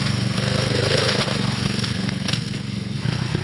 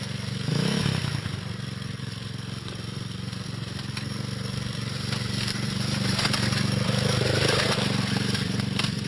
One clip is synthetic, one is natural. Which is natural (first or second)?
second